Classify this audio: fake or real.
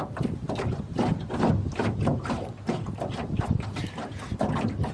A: fake